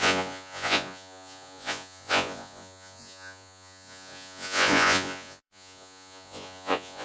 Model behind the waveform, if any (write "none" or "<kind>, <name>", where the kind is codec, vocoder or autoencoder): vocoder, Vocos